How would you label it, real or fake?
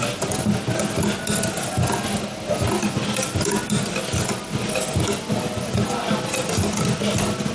real